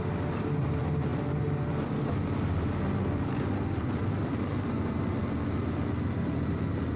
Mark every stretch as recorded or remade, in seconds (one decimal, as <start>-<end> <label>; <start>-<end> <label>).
0.0-7.0 recorded